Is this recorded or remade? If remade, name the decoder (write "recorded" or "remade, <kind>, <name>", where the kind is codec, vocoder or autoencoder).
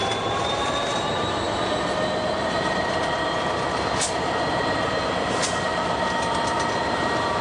remade, vocoder, BigVGAN v2